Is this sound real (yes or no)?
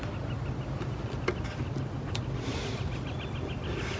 yes